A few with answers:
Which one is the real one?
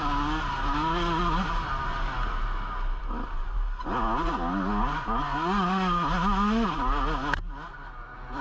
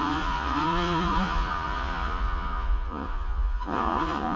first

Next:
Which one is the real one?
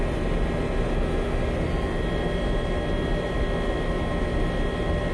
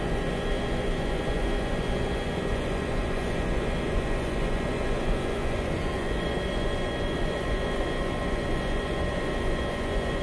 first